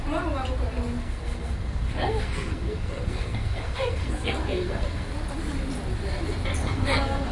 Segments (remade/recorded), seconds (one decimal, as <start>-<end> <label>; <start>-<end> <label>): 0.0-1.0 recorded; 1.0-5.1 remade; 5.1-6.6 recorded; 6.6-7.3 remade